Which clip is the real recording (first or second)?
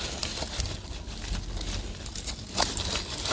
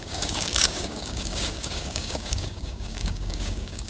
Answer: first